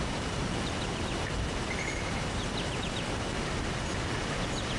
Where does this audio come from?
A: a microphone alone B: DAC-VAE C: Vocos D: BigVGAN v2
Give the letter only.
A